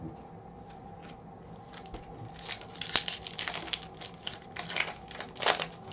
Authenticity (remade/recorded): recorded